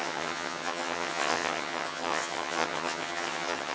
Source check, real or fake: fake